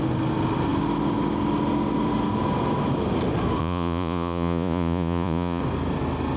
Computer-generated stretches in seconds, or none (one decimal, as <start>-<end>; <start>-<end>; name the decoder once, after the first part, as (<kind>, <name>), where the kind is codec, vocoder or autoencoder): 3.6-5.6 (vocoder, Vocos)